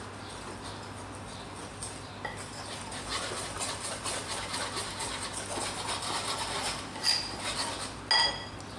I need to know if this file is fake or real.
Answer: real